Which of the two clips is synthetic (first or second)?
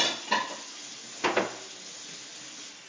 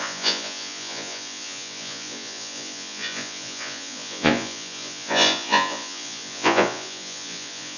second